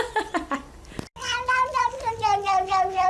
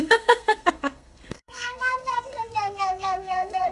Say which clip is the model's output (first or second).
second